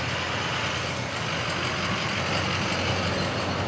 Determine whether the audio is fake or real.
real